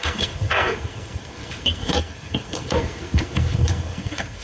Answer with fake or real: fake